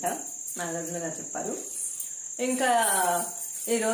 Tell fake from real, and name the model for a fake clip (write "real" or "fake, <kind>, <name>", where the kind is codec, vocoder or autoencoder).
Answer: real